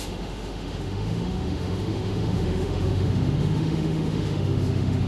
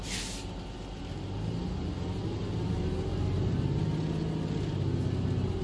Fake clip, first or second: first